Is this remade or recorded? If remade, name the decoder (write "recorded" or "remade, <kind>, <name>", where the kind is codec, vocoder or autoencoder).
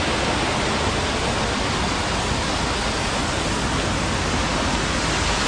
recorded